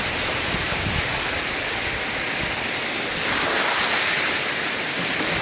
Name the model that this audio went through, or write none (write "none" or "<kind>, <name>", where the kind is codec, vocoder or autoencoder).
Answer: none